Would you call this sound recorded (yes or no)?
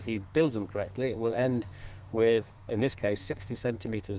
no